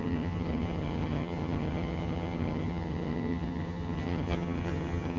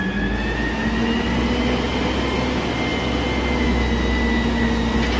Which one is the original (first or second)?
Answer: second